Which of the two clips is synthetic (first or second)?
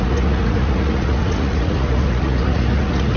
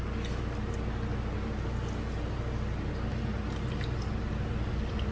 first